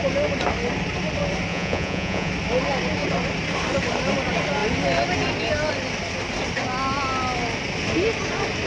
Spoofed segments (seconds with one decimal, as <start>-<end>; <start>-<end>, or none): 1.5-2.3